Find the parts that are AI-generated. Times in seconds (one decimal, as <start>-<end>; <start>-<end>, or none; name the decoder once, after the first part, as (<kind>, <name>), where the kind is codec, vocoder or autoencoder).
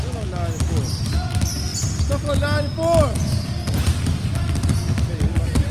none